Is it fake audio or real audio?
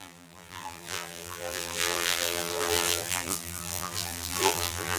fake